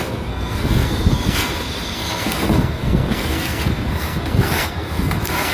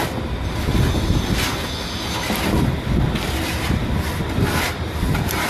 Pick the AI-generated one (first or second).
first